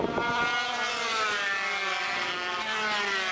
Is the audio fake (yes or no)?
no